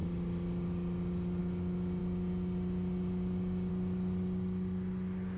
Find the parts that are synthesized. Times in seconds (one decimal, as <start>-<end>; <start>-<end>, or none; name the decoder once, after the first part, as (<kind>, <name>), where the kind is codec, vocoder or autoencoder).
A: none